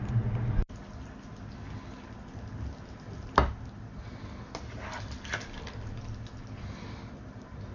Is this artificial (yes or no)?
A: no